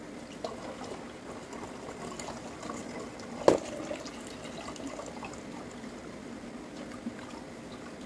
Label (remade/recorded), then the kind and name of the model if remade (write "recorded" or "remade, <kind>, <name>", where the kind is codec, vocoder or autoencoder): recorded